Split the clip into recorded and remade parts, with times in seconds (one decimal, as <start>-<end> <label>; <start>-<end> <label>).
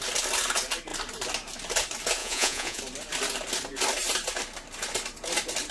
0.0-2.2 recorded; 2.2-2.8 remade; 2.8-5.7 recorded